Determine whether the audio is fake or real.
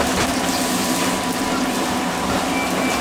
real